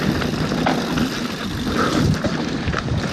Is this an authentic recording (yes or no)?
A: yes